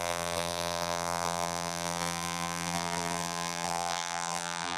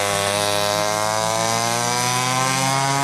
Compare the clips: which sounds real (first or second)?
second